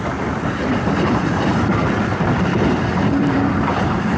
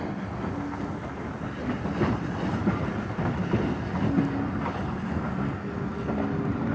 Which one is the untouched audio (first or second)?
second